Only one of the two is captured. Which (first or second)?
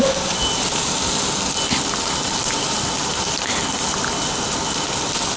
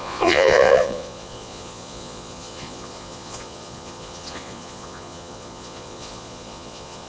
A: first